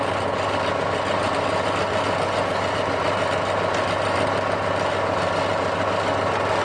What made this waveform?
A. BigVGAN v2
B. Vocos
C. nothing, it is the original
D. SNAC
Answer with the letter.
C